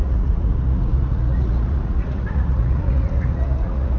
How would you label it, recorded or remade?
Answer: remade